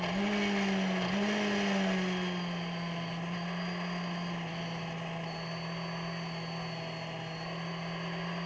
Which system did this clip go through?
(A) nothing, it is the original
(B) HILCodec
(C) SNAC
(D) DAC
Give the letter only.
A